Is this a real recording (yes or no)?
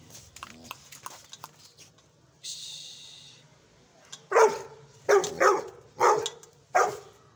yes